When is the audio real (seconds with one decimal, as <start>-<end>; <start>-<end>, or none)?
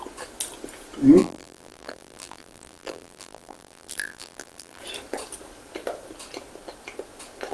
0.0-1.2; 4.8-7.5